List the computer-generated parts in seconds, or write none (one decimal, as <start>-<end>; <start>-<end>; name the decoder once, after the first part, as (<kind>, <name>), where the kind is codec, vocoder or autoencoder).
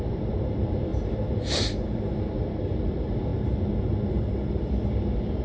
0.0-3.3 (vocoder, BigVGAN v2); 4.5-5.4